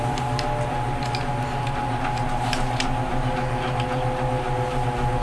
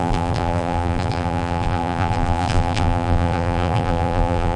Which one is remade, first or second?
second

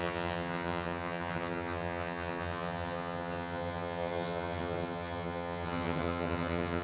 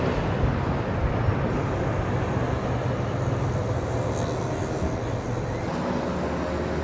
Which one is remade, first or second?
first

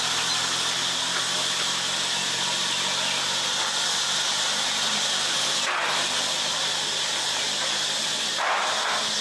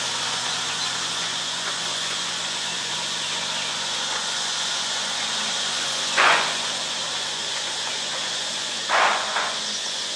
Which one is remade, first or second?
second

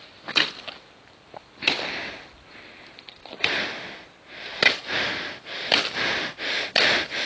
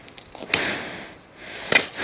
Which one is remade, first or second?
first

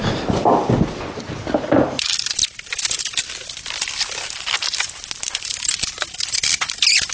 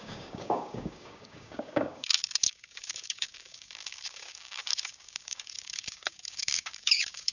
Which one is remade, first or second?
second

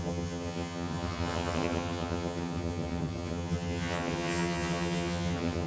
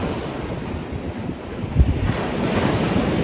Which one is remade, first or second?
first